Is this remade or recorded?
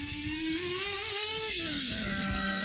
remade